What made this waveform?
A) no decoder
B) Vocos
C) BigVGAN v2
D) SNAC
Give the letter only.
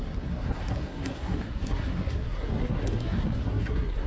D